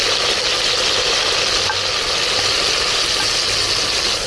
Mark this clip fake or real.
real